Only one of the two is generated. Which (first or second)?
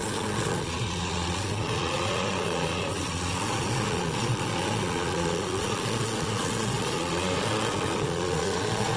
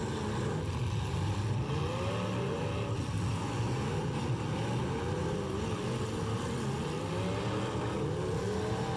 first